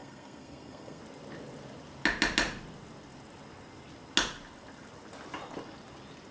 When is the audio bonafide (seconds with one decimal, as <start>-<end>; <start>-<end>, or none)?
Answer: 1.0-6.3